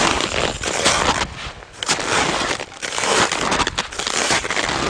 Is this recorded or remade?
recorded